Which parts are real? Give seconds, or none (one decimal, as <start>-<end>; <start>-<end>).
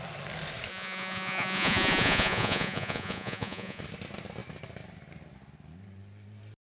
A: 0.0-0.7; 3.8-6.7